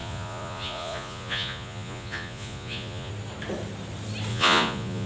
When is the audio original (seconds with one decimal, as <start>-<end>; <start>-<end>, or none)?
3.1-4.3